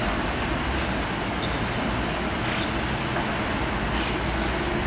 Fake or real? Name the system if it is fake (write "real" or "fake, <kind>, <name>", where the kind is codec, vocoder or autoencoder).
real